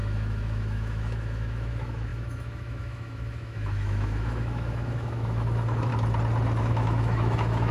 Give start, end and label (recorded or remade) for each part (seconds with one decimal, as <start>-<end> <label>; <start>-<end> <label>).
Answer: 0.0-5.9 remade; 5.9-6.6 recorded; 6.6-7.7 remade

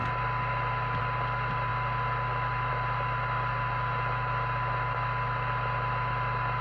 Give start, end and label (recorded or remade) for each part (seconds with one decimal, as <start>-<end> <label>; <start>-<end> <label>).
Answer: 0.0-6.6 recorded

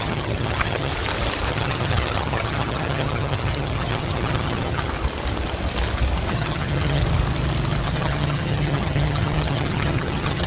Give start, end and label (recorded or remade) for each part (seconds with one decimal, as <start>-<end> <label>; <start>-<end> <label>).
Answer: 0.0-0.9 remade; 0.9-1.5 recorded; 1.5-4.9 remade; 4.9-6.3 recorded; 6.3-7.0 remade; 7.0-7.9 recorded; 7.9-10.5 remade

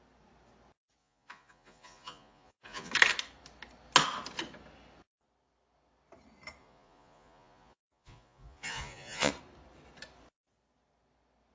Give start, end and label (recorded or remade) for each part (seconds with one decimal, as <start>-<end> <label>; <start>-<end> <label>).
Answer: 0.0-1.0 recorded; 1.0-2.9 remade; 2.9-6.6 recorded; 6.6-9.3 remade; 9.3-11.5 recorded

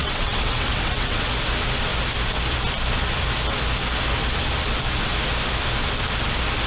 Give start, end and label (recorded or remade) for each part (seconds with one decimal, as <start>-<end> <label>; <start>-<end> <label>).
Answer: 0.0-1.3 remade; 1.3-6.7 recorded

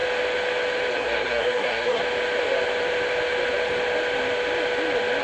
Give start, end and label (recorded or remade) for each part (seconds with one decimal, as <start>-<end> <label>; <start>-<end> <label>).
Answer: 0.0-0.9 recorded; 0.9-2.0 remade; 2.0-5.2 recorded